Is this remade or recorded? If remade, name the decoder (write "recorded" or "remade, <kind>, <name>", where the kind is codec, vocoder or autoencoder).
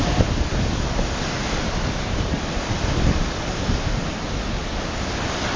recorded